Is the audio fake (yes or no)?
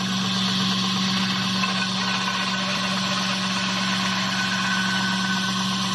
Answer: no